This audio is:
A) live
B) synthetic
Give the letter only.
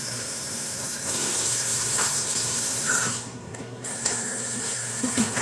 B